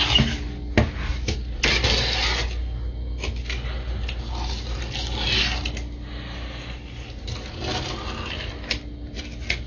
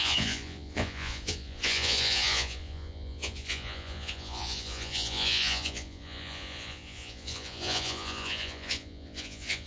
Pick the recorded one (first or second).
first